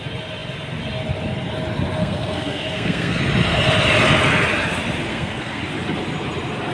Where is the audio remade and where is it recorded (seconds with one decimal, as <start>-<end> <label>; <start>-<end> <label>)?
0.0-2.0 recorded; 2.0-3.2 remade; 3.2-5.1 recorded; 5.1-5.6 remade; 5.6-6.7 recorded